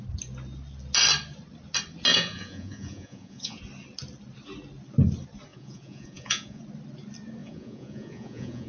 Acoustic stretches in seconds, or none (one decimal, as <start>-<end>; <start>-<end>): 0.0-2.1; 3.6-5.5; 6.6-7.4